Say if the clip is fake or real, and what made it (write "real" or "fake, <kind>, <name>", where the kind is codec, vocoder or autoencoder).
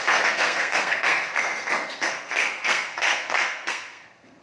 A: fake, codec, SNAC